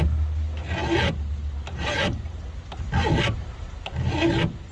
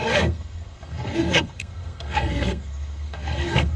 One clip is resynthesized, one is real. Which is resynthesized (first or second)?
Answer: second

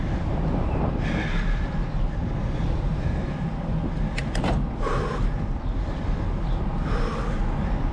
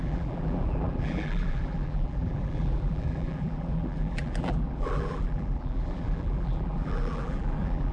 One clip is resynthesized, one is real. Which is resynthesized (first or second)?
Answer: second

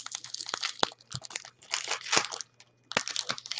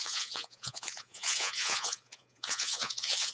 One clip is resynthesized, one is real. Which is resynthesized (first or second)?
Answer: second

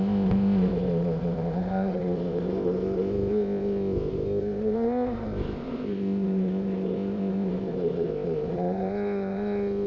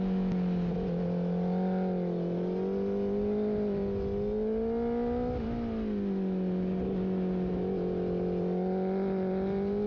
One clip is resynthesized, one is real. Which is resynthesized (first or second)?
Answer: first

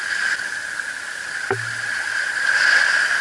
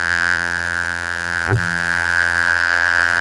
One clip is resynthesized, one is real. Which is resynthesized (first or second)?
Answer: second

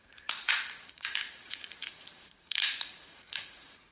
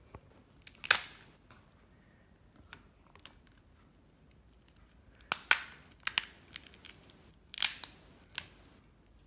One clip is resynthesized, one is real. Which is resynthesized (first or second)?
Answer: first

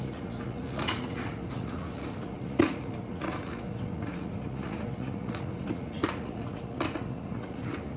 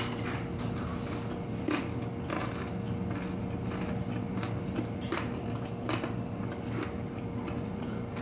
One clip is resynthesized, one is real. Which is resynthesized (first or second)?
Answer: first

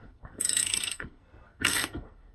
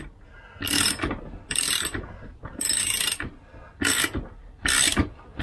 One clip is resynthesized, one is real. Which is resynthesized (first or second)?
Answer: first